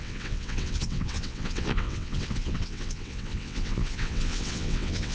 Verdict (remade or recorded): remade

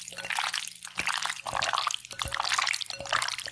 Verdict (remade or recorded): recorded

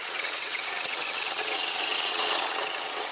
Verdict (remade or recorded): remade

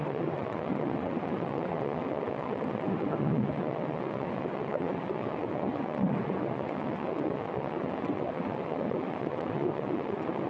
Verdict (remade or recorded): remade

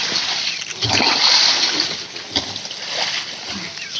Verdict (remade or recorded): recorded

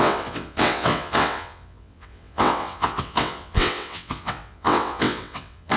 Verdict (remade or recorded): remade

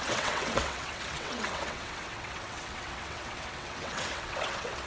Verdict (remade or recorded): remade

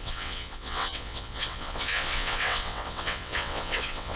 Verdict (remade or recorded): remade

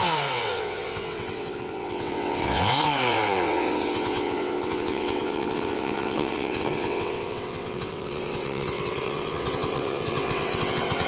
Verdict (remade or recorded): remade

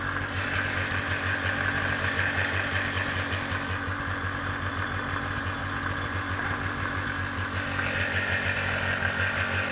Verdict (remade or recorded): recorded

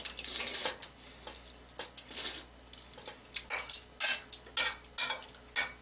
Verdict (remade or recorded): recorded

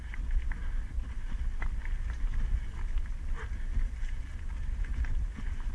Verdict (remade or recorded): recorded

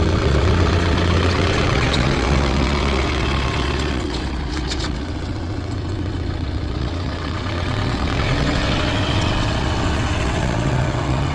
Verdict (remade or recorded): remade